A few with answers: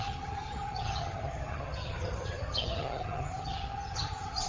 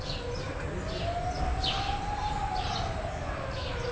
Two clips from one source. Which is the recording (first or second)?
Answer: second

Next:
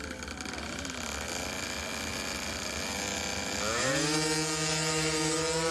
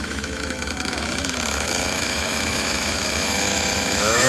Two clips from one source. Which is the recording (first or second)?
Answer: first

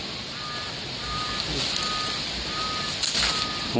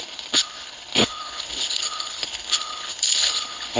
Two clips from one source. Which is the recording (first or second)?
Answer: first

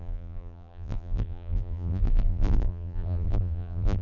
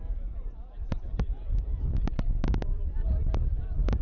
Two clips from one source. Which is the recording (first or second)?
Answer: second